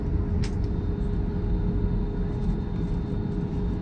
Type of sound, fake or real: real